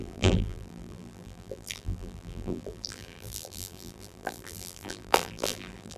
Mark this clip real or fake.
fake